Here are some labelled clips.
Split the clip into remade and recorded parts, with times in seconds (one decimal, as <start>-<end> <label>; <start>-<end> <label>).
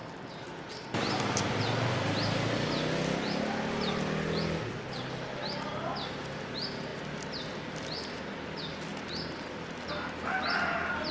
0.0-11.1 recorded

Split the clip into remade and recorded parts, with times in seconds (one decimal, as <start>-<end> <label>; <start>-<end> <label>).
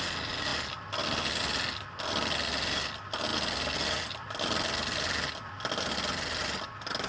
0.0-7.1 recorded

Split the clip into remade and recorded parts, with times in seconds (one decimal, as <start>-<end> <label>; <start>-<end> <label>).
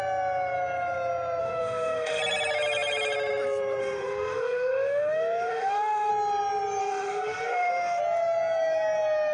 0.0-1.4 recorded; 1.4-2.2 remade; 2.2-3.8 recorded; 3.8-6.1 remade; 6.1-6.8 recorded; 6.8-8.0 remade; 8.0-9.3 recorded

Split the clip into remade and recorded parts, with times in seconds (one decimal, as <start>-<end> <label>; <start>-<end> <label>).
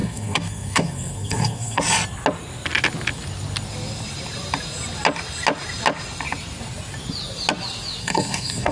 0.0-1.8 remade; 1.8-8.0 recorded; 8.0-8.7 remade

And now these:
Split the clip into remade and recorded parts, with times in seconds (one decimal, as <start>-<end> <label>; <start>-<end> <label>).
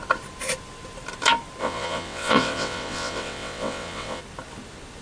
0.0-1.6 recorded; 1.6-4.2 remade; 4.2-5.0 recorded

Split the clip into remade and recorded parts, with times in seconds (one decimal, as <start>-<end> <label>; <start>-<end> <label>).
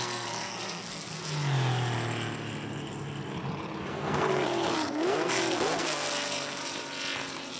0.0-1.2 remade; 1.2-3.9 recorded; 3.9-6.6 remade; 6.6-7.6 recorded